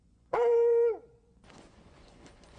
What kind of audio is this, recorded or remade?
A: remade